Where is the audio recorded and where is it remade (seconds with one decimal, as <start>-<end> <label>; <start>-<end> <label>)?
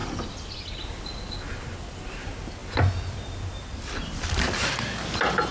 0.0-5.5 recorded